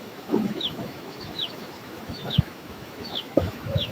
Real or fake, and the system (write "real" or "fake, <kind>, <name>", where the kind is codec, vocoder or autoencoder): fake, autoencoder, DAC-VAE